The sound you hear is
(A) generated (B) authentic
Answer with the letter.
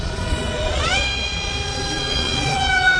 A